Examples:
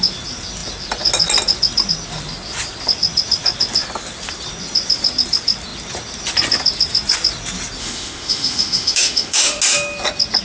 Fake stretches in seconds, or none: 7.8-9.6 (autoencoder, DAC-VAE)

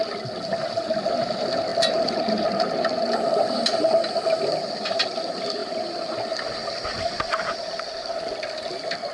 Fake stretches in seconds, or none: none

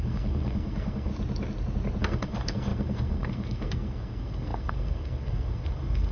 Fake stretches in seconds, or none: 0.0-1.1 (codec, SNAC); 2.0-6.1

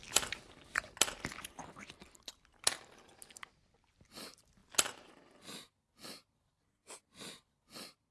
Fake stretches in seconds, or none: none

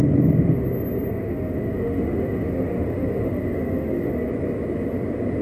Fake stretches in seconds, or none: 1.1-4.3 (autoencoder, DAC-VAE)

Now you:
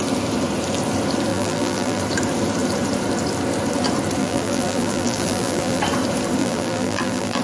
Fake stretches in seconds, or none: 1.3-2.0 (vocoder, BigVGAN v2); 4.2-5.8; 6.4-7.4